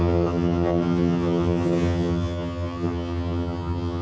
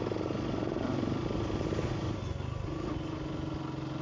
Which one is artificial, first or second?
first